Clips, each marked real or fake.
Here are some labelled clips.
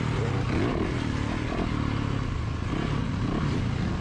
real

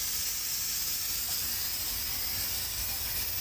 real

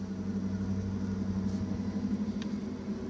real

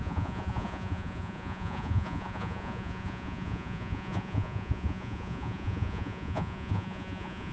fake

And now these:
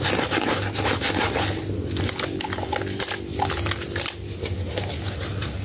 real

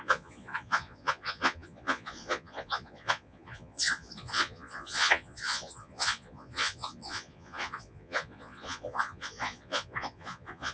fake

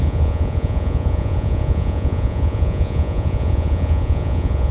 fake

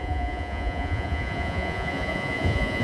fake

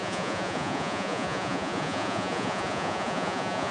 fake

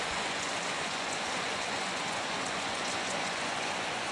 fake